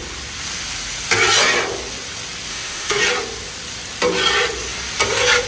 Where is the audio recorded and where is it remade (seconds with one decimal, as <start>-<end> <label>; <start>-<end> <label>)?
0.0-2.5 recorded; 2.5-3.0 remade; 3.0-5.5 recorded